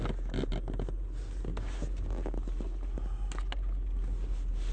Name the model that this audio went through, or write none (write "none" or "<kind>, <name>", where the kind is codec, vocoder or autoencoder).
none